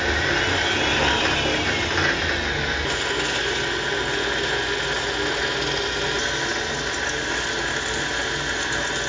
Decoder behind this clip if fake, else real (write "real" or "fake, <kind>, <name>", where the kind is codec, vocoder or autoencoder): real